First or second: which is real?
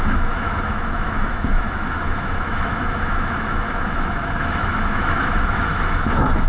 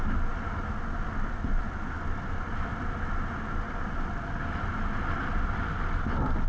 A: second